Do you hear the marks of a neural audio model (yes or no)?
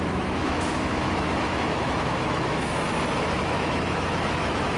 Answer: yes